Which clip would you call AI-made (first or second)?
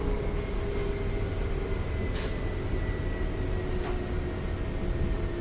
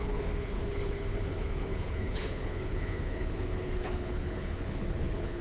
second